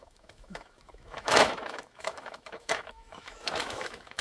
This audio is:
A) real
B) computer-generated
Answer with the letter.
B